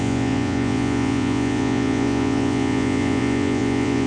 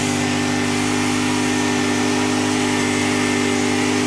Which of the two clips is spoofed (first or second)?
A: first